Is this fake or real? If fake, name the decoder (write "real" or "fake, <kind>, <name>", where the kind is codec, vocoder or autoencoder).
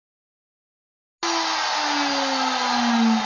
real